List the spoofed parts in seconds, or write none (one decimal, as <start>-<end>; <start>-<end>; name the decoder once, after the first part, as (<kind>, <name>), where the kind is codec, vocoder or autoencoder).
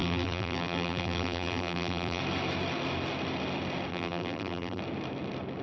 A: 0.0-2.2 (vocoder, BigVGAN v2); 3.9-4.8